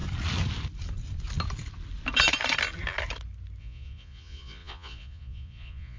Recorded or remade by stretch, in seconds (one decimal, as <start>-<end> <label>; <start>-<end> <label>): 0.0-3.6 recorded; 3.6-6.0 remade